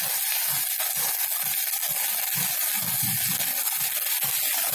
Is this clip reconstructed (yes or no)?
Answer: no